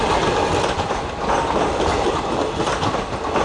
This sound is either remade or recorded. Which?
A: recorded